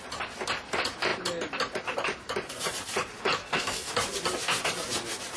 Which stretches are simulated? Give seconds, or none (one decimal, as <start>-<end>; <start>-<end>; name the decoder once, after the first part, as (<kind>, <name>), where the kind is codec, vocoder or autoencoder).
3.4-3.9 (codec, SNAC)